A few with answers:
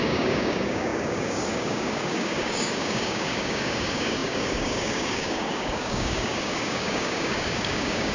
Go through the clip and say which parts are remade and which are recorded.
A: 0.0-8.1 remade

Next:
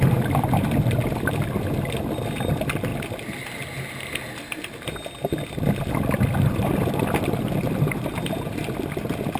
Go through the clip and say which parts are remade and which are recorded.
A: 0.0-9.4 recorded

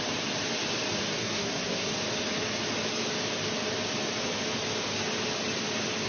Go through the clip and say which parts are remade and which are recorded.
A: 0.0-1.2 recorded; 1.2-1.9 remade; 1.9-6.1 recorded

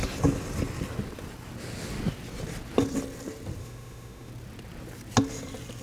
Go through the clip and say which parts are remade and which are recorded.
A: 0.0-3.6 recorded; 3.6-4.3 remade; 4.3-5.8 recorded

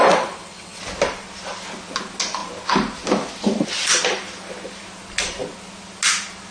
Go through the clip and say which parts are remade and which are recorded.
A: 0.0-0.8 remade; 0.8-6.5 recorded

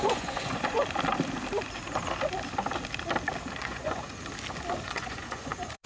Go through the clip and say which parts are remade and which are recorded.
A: 0.0-0.8 remade; 0.8-3.6 recorded; 3.6-4.2 remade; 4.2-4.8 recorded; 4.8-5.9 remade